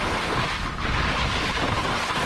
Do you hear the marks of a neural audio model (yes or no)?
no